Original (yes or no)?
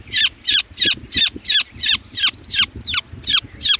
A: yes